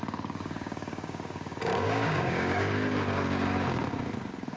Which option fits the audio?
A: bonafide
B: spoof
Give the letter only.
B